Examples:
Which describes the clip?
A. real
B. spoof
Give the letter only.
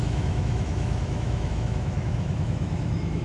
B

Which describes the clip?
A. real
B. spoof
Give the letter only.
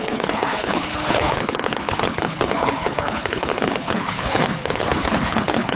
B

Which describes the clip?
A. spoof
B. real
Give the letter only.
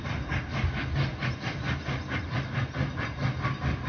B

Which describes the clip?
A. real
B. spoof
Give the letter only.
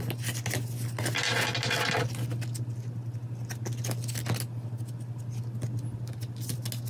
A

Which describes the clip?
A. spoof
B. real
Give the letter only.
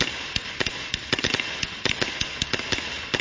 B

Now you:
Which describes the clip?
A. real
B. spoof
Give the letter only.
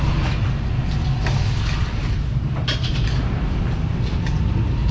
A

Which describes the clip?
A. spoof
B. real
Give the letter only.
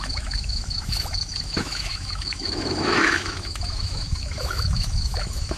A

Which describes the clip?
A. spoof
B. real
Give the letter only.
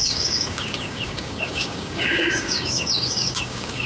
A